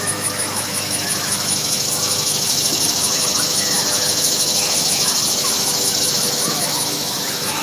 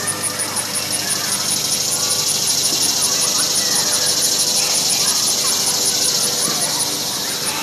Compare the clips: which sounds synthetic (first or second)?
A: first